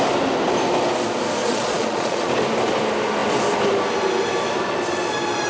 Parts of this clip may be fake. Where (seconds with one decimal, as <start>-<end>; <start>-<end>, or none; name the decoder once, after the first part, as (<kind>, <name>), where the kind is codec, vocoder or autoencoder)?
1.4-2.3 (vocoder, Vocos)